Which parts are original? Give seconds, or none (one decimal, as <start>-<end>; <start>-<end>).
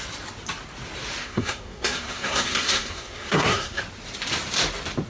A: 0.0-1.2; 3.8-5.1